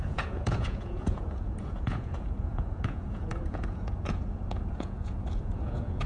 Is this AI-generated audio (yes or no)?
yes